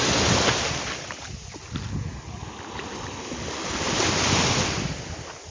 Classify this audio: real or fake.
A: real